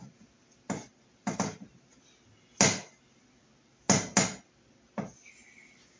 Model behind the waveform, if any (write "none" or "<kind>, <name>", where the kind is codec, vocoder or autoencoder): none